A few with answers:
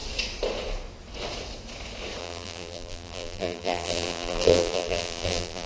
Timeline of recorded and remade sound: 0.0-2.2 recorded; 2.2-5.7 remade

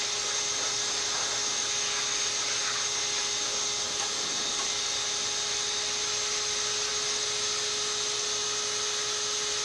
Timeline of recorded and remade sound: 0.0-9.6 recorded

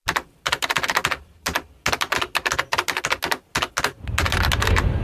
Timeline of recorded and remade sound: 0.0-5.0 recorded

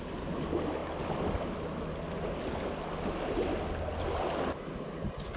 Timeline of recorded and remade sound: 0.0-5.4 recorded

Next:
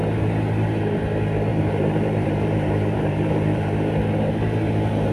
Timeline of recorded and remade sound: 0.0-1.0 remade; 1.0-1.5 recorded; 1.5-3.7 remade; 3.7-5.1 recorded

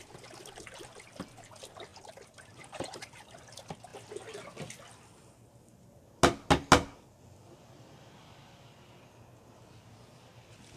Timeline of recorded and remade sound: 0.0-1.9 recorded; 1.9-3.3 remade; 3.3-10.8 recorded

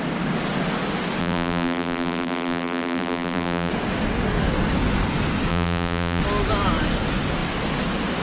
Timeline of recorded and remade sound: 0.0-1.2 recorded; 1.2-3.7 remade; 3.7-5.5 recorded; 5.5-6.2 remade; 6.2-8.2 recorded

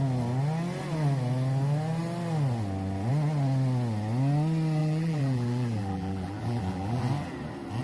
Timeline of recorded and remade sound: 0.0-4.8 recorded; 4.8-7.0 remade; 7.0-7.8 recorded